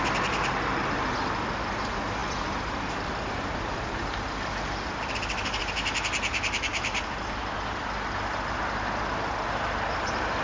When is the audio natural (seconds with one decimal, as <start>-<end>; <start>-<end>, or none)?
0.0-2.2; 5.6-6.7; 7.3-10.4

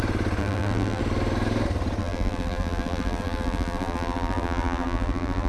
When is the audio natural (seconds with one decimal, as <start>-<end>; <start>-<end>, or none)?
0.0-0.4; 1.0-2.0

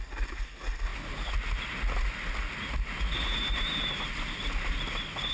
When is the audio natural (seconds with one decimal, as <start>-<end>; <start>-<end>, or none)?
0.0-5.3

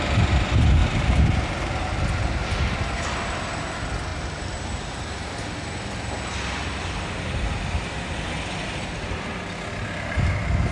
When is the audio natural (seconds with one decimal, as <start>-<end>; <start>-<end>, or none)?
0.0-0.8; 2.0-4.1; 5.1-10.7

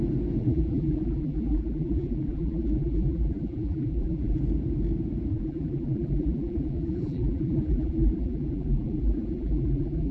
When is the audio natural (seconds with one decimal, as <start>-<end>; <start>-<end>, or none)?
0.0-0.4; 4.4-5.3

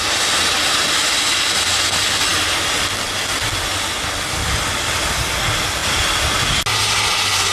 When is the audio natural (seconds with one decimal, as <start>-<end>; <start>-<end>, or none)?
0.0-7.5

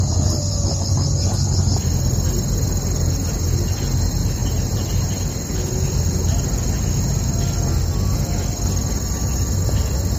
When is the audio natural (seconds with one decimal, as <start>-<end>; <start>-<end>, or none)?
0.0-4.4; 5.1-10.2

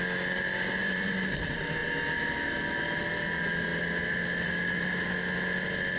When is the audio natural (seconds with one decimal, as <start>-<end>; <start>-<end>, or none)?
0.0-0.8; 1.4-6.0